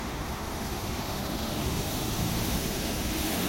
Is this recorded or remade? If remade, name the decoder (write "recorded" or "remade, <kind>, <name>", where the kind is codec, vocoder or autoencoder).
remade, autoencoder, DAC-VAE